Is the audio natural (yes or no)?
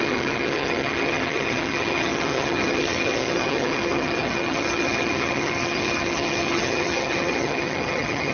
no